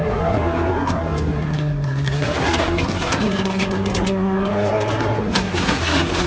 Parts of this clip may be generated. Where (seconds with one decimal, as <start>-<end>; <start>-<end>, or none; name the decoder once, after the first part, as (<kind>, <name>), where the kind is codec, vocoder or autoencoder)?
0.0-6.3 (codec, SNAC)